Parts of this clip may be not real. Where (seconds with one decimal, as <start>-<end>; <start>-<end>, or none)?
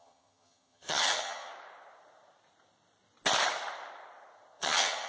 0.0-1.5; 4.6-5.1